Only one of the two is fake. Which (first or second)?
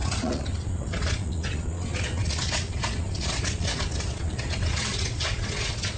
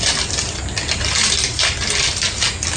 first